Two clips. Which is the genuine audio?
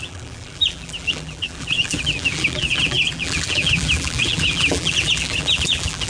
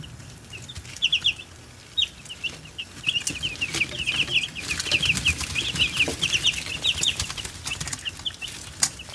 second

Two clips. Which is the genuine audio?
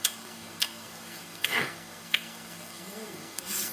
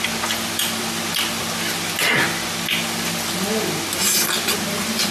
second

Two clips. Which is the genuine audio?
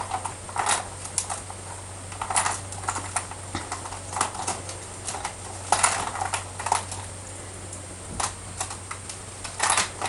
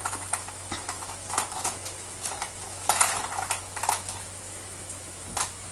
first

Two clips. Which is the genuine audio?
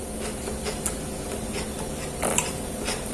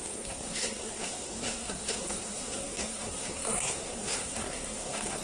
first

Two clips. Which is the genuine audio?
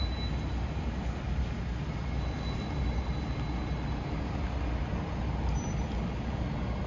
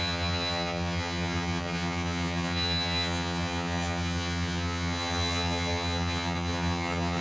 first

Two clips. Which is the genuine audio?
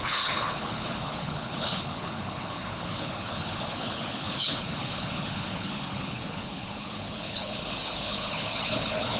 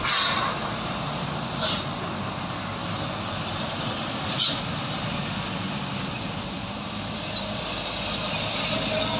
second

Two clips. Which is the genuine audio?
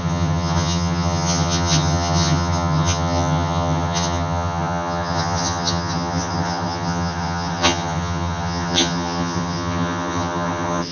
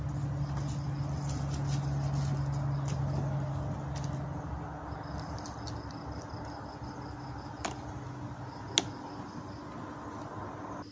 second